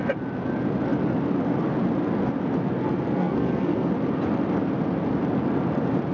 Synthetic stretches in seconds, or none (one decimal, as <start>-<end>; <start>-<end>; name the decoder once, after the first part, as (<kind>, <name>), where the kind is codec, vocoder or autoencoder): 3.2-3.9 (codec, SNAC)